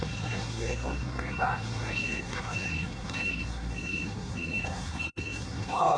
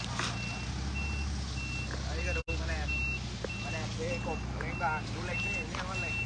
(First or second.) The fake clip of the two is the first